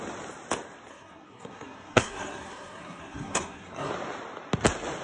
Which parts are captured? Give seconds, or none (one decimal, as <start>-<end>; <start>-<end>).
0.0-0.9; 3.9-5.0